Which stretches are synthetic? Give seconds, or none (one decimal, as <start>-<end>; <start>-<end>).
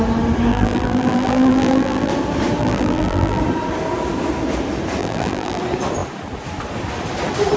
0.5-2.1; 2.6-3.4; 5.0-5.6